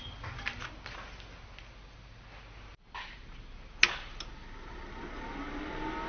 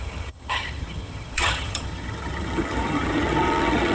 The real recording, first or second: first